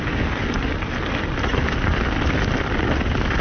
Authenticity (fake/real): real